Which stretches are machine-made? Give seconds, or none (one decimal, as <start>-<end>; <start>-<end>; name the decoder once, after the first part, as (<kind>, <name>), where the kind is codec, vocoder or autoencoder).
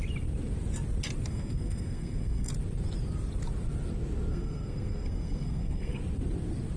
1.3-2.5 (codec, SNAC); 4.3-6.0